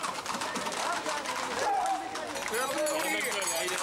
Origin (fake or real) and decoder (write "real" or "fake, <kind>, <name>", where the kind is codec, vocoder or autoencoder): real